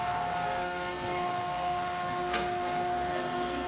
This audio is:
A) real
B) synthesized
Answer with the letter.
B